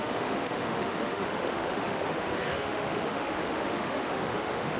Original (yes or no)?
no